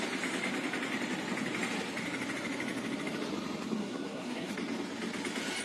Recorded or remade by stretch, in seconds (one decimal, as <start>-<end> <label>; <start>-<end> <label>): 0.0-3.8 recorded; 3.8-4.5 remade; 4.5-5.6 recorded